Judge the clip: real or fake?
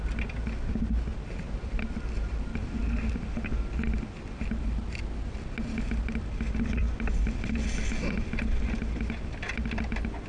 real